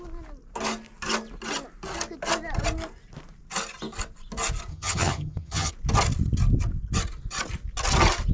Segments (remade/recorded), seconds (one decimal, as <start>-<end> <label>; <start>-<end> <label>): 0.0-4.7 recorded; 4.7-5.7 remade; 5.7-8.3 recorded